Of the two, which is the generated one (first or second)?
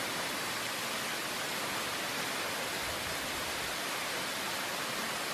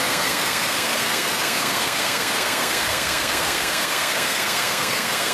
second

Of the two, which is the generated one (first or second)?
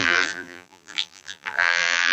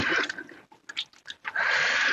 first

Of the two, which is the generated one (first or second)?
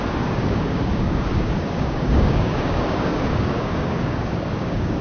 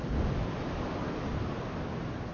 first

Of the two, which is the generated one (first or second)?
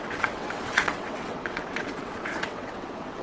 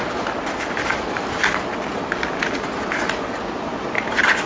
first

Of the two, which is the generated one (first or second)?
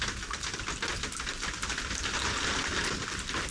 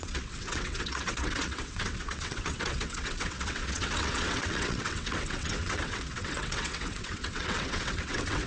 second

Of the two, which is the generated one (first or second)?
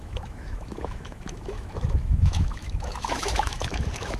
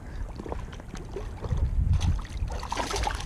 first